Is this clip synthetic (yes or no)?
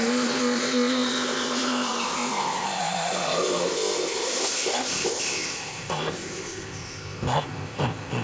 yes